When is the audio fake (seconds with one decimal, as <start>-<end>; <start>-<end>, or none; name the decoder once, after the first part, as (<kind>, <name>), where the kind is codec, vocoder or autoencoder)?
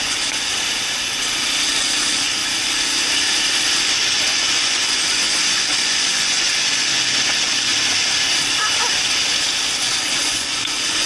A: 0.0-0.5 (vocoder, Vocos); 1.7-2.4; 3.8-7.7; 9.8-11.1